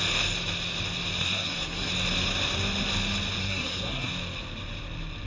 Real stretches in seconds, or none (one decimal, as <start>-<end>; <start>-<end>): 0.0-1.2; 1.9-3.4; 4.1-5.3